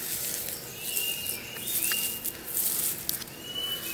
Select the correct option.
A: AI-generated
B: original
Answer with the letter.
B